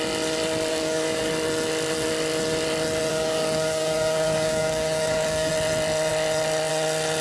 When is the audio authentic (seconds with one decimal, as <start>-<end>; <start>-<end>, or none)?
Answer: 0.0-0.7; 1.3-3.1; 5.5-7.2